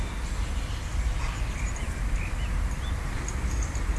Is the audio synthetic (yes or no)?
no